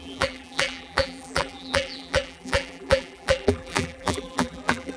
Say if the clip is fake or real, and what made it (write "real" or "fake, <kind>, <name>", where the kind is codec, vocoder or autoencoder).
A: fake, vocoder, BigVGAN v2